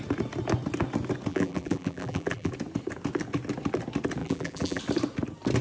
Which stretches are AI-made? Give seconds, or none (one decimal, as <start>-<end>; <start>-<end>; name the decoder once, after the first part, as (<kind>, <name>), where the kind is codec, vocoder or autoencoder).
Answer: 1.3-2.5 (vocoder, BigVGAN v2); 4.2-4.8